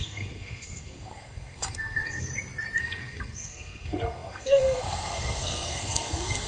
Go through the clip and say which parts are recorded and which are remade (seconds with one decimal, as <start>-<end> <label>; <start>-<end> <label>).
0.0-2.3 remade; 2.3-2.8 recorded; 2.8-6.5 remade